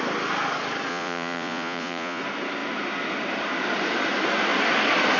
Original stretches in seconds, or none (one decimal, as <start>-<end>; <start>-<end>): 0.0-0.9; 2.2-5.2